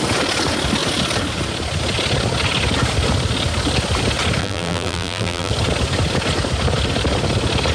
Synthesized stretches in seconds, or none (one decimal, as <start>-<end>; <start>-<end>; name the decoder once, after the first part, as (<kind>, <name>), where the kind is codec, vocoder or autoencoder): 4.4-5.5 (vocoder, BigVGAN v2)